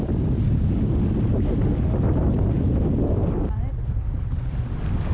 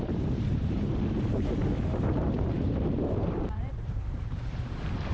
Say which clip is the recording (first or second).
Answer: first